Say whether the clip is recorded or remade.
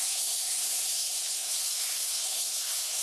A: remade